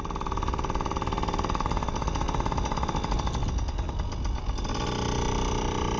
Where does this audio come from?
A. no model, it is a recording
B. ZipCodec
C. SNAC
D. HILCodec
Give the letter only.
A